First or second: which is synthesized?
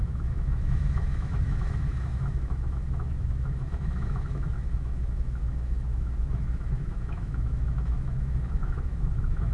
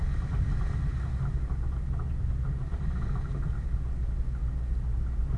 first